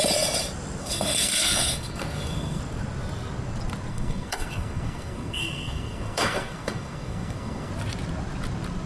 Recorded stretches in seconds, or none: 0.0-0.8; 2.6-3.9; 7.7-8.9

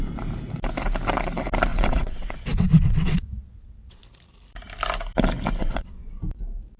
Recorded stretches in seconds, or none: 0.0-1.7; 4.0-5.6; 6.2-6.8